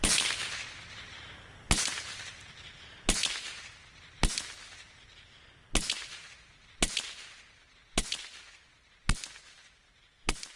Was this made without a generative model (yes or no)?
yes